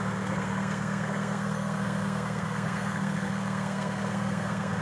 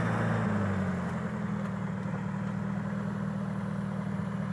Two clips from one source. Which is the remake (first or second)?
first